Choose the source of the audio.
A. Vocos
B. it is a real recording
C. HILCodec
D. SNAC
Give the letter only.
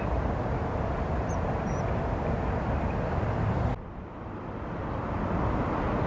B